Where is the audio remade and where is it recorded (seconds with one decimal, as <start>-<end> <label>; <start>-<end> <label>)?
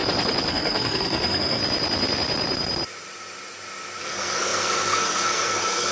0.0-0.5 recorded; 0.5-1.6 remade; 1.6-4.0 recorded; 4.0-5.9 remade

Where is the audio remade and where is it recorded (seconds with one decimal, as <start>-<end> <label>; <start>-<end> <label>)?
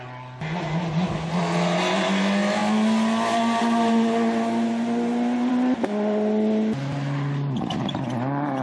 0.0-8.6 recorded